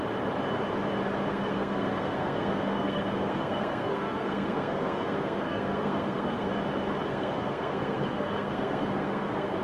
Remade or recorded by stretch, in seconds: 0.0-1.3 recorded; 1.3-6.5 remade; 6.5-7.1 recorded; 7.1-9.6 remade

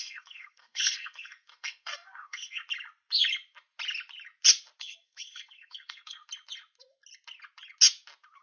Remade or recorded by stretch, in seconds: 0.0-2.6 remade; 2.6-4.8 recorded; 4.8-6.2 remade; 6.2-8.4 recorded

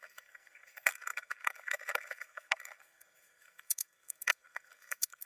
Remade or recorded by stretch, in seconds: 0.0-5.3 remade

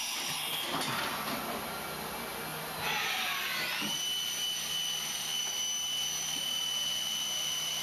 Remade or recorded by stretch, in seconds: 0.0-7.8 recorded